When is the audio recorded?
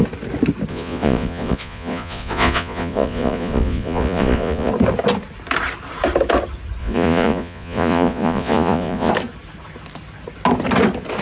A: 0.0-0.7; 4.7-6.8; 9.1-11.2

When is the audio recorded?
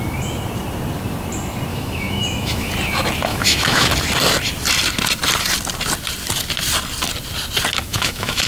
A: 0.0-1.7; 2.7-3.3; 3.9-7.9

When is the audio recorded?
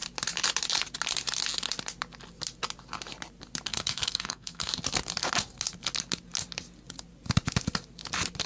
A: 0.0-3.7; 4.7-8.5